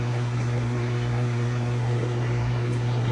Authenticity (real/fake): fake